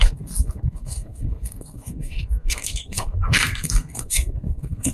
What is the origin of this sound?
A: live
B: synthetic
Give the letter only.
B